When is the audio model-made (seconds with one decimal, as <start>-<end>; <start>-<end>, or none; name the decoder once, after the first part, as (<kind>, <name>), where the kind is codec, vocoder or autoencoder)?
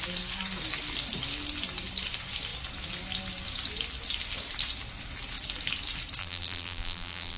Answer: 6.2-7.4 (vocoder, BigVGAN v2)